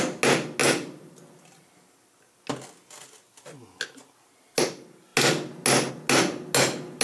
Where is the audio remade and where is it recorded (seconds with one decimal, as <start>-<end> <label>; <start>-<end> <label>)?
0.0-7.0 recorded